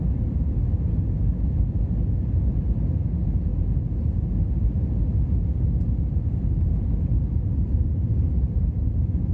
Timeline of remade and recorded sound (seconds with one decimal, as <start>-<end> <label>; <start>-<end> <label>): 0.0-9.3 recorded